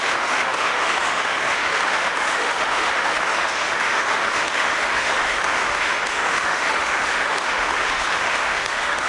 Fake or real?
fake